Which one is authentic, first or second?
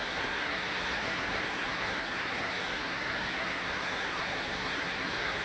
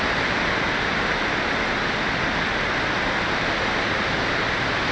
second